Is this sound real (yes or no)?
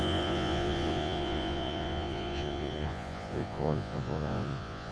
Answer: no